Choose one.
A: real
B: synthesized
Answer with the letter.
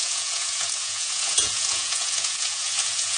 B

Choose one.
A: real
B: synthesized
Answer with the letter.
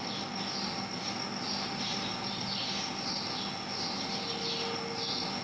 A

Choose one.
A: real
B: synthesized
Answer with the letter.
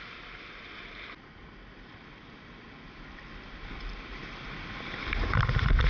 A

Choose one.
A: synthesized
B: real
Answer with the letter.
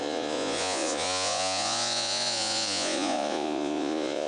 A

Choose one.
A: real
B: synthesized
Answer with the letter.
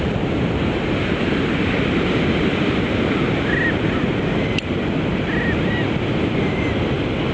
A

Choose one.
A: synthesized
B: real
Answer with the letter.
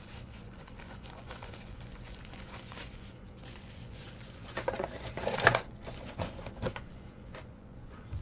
A